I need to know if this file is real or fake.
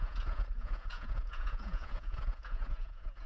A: fake